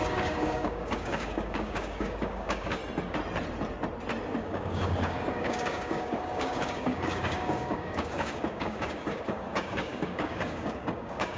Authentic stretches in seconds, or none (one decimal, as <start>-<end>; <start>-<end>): 2.8-4.4